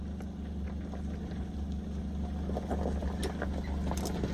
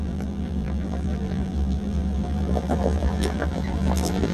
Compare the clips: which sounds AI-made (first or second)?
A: second